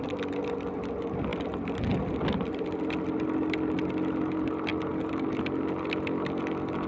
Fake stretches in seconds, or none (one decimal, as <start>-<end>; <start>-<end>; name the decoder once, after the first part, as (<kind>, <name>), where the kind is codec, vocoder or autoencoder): none